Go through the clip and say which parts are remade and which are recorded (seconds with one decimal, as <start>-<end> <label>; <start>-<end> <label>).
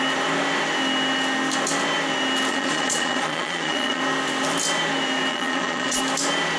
0.0-2.5 recorded; 2.5-4.0 remade; 4.0-5.3 recorded; 5.3-6.0 remade; 6.0-6.6 recorded